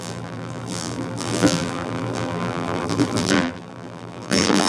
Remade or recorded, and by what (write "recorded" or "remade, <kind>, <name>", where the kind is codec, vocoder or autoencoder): remade, vocoder, BigVGAN v2